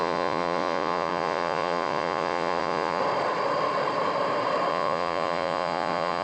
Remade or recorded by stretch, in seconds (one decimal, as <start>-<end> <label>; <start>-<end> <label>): 0.0-3.0 remade; 3.0-4.7 recorded; 4.7-6.2 remade